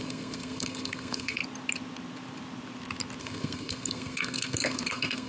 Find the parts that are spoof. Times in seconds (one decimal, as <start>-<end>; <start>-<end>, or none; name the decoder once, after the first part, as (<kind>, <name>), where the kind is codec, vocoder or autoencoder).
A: 0.0-1.4 (codec, SNAC); 3.2-5.3